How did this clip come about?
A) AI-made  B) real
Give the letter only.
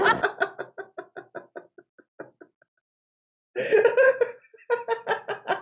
B